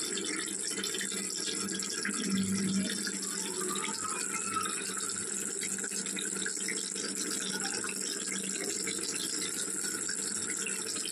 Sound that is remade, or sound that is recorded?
recorded